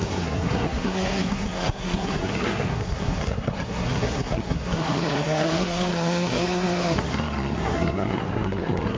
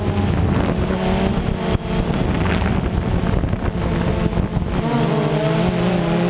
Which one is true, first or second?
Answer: second